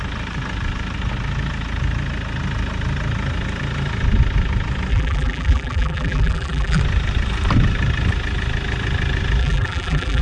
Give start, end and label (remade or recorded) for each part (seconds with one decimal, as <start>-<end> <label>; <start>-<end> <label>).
0.0-4.9 recorded; 4.9-6.8 remade; 6.8-9.4 recorded; 9.4-10.2 remade